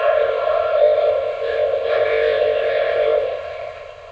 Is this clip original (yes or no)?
no